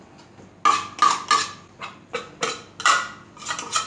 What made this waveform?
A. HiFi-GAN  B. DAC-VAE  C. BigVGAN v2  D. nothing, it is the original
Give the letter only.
D